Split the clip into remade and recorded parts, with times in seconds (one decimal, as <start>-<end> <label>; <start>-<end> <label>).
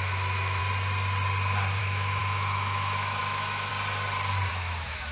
0.0-0.6 remade; 0.6-1.8 recorded; 1.8-3.7 remade; 3.7-4.5 recorded; 4.5-5.1 remade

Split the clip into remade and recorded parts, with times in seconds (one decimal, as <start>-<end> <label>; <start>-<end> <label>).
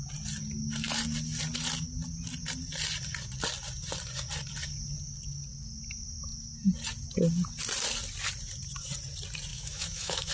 0.0-9.5 recorded; 9.5-10.3 remade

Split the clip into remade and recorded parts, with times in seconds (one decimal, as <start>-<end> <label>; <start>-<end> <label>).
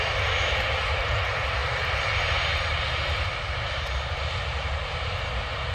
0.0-5.7 recorded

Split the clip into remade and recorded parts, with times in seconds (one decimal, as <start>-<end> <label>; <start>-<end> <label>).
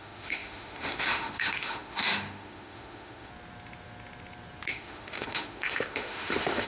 0.0-3.3 remade; 3.3-4.7 recorded; 4.7-6.7 remade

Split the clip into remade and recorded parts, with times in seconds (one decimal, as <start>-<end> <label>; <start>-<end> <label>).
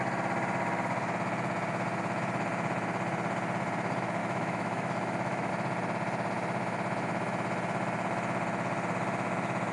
0.0-4.2 recorded; 4.2-5.5 remade; 5.5-9.7 recorded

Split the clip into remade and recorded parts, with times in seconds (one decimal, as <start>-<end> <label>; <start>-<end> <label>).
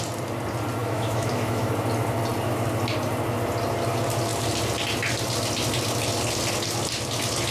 0.0-0.8 recorded; 0.8-1.7 remade; 1.7-7.5 recorded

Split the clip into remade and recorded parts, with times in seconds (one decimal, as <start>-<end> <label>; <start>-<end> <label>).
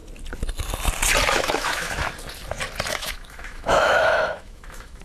0.0-1.3 recorded; 1.3-2.0 remade; 2.0-2.9 recorded; 2.9-5.0 remade